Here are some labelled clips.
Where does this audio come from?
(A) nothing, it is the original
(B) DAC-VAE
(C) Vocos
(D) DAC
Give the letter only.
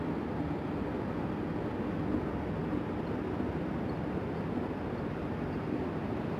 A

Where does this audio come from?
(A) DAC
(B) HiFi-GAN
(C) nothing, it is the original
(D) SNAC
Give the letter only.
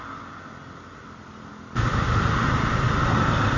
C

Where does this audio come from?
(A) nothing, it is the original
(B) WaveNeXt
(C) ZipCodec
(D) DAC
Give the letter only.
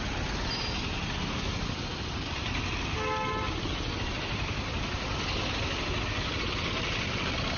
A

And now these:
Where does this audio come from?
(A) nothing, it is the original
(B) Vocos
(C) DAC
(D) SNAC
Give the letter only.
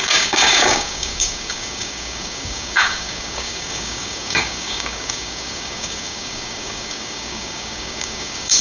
C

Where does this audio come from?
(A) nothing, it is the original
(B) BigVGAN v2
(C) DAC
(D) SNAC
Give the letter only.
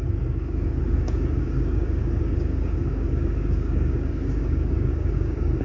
C